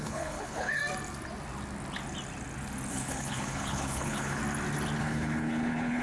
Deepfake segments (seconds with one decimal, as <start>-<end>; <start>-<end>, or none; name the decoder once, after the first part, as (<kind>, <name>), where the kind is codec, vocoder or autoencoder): 0.0-0.8 (codec, HILCodec); 2.9-4.4; 5.0-6.0